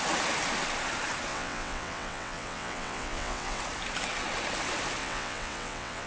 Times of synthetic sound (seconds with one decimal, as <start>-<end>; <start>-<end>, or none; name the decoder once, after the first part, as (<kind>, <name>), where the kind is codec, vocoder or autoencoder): 1.3-3.6 (vocoder, WaveNeXt); 5.0-6.1